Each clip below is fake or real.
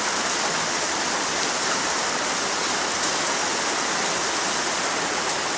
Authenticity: real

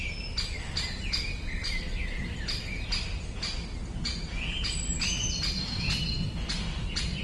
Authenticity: real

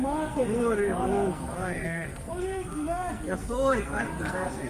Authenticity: fake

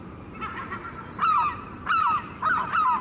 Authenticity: real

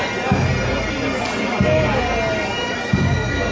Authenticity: real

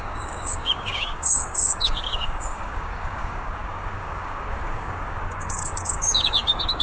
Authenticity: fake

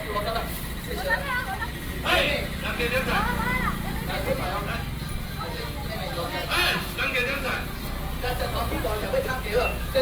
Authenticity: real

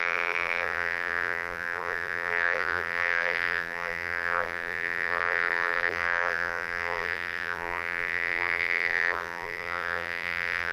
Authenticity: fake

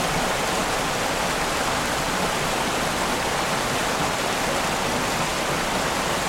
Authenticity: real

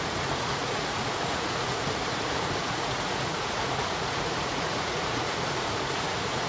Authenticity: fake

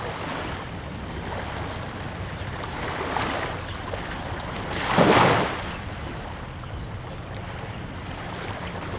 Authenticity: real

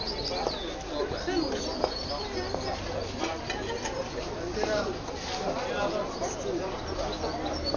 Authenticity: real